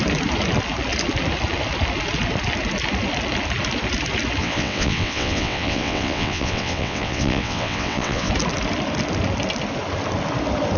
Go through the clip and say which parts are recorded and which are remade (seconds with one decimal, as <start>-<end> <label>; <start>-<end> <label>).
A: 0.0-4.4 recorded; 4.4-8.3 remade; 8.3-10.8 recorded